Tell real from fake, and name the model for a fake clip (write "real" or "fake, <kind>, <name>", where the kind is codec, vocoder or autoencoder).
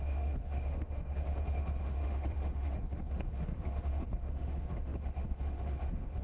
fake, autoencoder, DAC-VAE